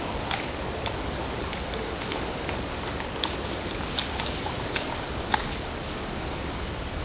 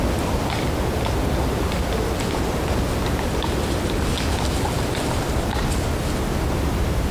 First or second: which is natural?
second